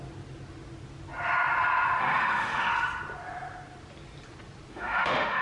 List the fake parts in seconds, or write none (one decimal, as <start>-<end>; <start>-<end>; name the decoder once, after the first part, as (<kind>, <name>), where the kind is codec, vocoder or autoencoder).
2.0-2.7 (autoencoder, DAC-VAE); 4.7-5.4